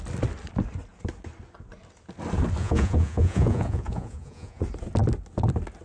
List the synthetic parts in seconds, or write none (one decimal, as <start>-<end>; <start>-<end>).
2.6-4.6